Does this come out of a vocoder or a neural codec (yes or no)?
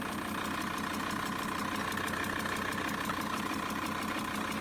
no